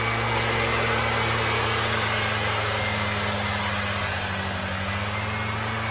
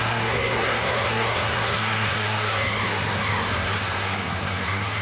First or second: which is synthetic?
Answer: second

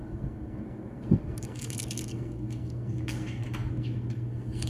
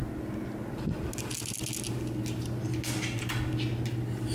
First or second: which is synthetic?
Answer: first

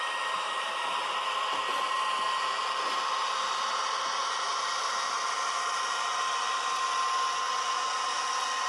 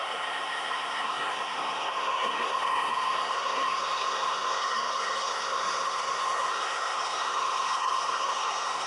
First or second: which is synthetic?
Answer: second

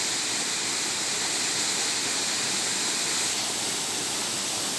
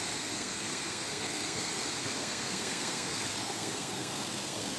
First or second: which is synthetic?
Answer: second